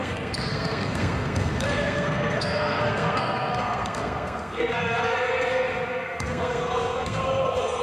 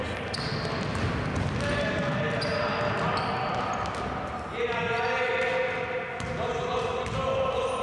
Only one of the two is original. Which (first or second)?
second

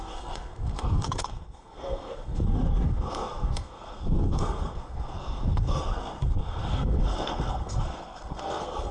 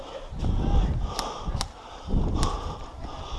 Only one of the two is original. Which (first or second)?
second